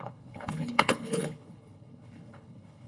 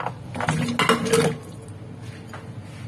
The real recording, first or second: second